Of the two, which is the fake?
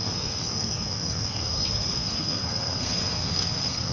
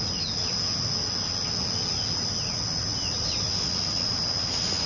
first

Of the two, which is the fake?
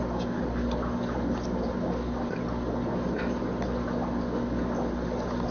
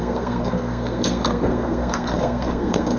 second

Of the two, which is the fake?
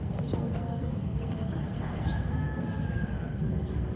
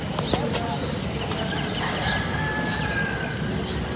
first